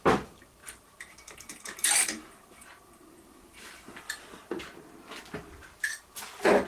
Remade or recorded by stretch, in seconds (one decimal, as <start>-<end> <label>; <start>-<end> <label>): 0.0-0.6 recorded; 0.6-4.6 remade; 4.6-6.7 recorded